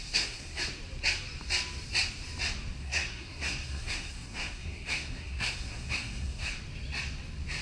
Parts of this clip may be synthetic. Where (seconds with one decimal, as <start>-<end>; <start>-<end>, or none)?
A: 0.0-0.6; 2.8-6.6